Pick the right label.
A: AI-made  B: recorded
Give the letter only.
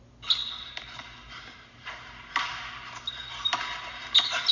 B